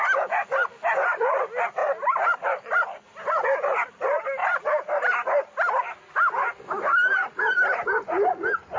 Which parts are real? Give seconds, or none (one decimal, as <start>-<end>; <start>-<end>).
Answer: 0.0-8.8